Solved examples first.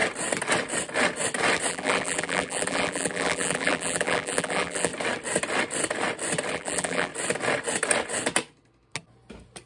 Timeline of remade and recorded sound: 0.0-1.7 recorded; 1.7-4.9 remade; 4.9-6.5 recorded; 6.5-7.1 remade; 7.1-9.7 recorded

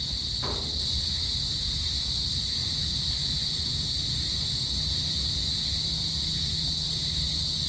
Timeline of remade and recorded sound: 0.0-7.7 recorded

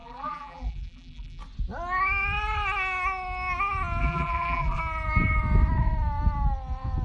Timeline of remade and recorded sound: 0.0-1.4 remade; 1.4-4.0 recorded; 4.0-4.8 remade; 4.8-7.0 recorded

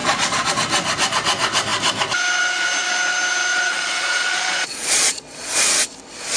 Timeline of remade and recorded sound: 0.0-0.5 remade; 0.5-3.5 recorded; 3.5-5.6 remade; 5.6-6.4 recorded

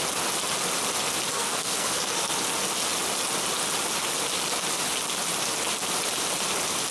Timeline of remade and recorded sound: 0.0-1.3 recorded; 1.3-2.3 remade; 2.3-6.9 recorded

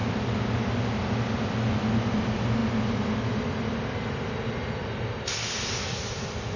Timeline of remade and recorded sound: 0.0-6.6 recorded